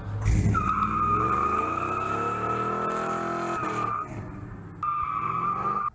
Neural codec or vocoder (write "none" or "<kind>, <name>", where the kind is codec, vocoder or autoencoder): none